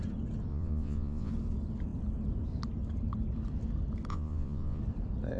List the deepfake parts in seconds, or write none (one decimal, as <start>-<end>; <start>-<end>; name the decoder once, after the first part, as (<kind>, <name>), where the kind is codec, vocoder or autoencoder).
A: 0.5-1.3 (vocoder, Vocos); 4.1-4.8